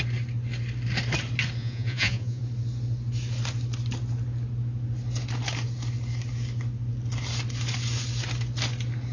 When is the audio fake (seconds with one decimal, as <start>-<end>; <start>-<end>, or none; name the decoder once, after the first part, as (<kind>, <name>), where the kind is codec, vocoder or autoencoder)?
1.6-2.4 (vocoder, Vocos)